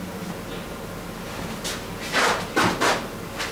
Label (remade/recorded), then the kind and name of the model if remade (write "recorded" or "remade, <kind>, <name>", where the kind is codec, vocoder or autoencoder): recorded